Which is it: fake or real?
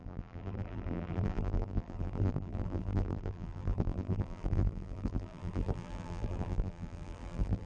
fake